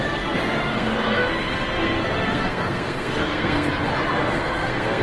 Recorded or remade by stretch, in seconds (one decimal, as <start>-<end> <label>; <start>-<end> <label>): 0.0-0.7 recorded; 0.7-3.7 remade; 3.7-4.2 recorded; 4.2-5.0 remade